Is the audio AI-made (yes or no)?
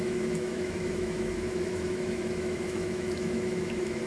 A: yes